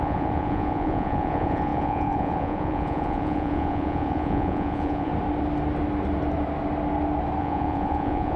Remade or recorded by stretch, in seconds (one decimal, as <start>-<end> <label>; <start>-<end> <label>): 0.0-5.1 remade; 5.1-7.4 recorded; 7.4-8.4 remade